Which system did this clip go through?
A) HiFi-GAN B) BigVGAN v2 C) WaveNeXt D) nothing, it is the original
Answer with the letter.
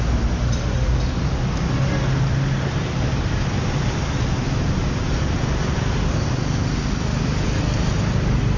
D